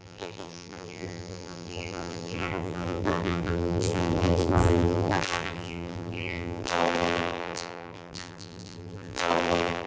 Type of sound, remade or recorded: remade